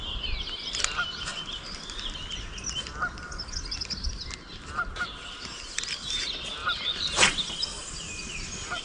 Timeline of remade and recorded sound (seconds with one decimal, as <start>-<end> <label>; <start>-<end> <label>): 0.0-6.6 recorded; 6.6-8.8 remade